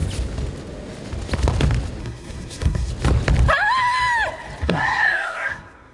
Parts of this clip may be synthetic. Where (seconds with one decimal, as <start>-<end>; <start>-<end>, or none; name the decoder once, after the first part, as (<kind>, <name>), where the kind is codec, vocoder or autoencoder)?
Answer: 2.0-2.9 (codec, SNAC); 4.6-5.9